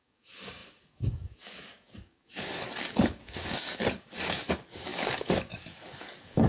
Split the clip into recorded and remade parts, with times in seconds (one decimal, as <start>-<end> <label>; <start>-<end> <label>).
0.0-6.5 remade